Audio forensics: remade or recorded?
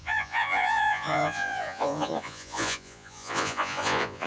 remade